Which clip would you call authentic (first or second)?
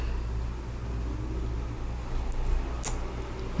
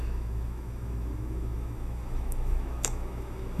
first